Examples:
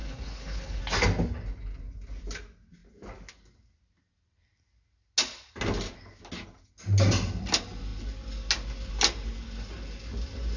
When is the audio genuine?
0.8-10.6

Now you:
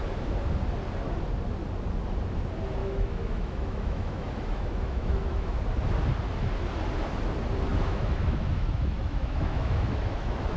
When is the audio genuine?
0.0-2.8; 5.6-7.7